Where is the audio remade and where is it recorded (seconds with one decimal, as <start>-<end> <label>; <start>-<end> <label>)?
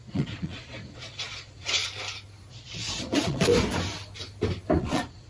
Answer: 0.0-1.8 remade; 1.8-2.5 recorded; 2.5-3.5 remade; 3.5-4.8 recorded; 4.8-5.3 remade